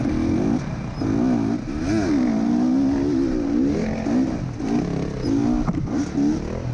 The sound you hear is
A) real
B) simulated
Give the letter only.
A